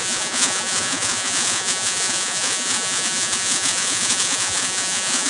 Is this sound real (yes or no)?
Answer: no